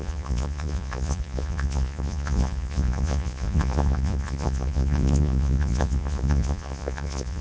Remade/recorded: remade